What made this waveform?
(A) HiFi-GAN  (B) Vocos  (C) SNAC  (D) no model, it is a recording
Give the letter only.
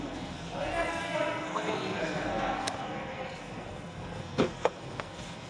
C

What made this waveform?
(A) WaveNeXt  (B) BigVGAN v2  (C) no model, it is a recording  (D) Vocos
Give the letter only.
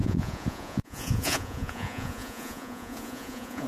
D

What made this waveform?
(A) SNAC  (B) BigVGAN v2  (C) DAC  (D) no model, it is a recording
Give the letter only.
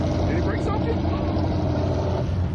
B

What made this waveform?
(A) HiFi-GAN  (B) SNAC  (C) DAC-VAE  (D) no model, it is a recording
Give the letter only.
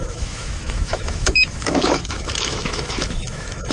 C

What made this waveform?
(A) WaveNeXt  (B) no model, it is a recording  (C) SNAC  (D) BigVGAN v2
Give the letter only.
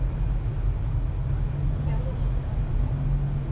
B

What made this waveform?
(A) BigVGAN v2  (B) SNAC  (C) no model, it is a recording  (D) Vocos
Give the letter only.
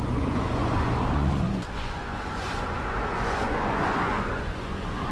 D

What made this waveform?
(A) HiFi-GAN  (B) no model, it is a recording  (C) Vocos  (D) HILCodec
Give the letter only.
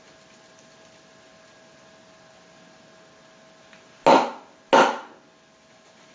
B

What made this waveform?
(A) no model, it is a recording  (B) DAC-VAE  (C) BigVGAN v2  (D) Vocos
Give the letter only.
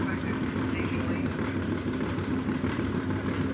A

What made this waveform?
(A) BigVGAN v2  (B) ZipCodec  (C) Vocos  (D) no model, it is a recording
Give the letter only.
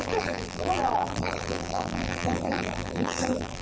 A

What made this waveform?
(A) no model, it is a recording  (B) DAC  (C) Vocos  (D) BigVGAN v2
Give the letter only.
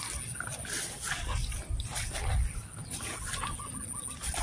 A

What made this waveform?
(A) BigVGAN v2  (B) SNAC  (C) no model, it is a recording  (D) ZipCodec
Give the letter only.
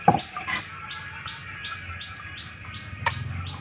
C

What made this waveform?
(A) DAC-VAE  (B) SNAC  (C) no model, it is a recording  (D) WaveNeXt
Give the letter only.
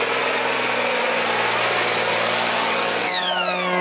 C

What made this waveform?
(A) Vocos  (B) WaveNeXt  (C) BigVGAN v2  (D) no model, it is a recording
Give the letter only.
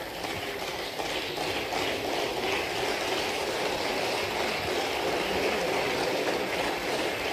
D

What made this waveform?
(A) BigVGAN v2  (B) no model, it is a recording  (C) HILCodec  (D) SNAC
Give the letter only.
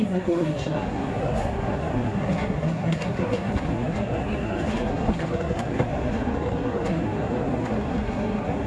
D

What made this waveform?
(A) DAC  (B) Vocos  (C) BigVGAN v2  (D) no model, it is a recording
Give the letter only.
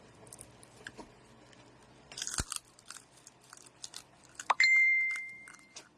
C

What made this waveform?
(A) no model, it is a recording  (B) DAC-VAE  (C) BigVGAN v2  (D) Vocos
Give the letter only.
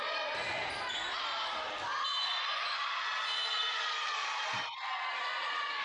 A